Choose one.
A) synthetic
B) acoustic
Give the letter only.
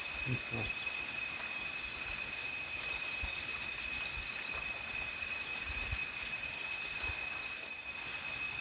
B